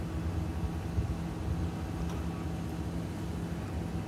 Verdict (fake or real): real